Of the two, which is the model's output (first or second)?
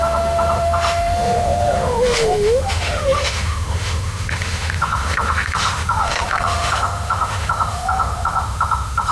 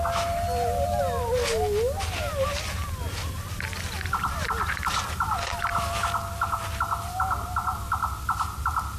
first